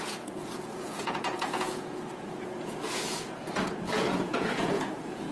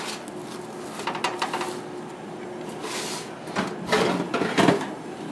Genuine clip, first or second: second